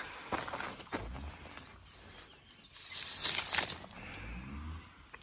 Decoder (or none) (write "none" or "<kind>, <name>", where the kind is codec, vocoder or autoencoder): none